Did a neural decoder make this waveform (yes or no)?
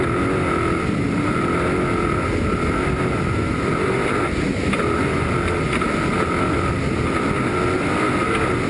no